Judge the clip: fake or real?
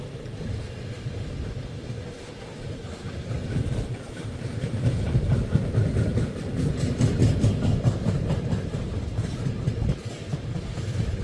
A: fake